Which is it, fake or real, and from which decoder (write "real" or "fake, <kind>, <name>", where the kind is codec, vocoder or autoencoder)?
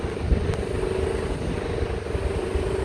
real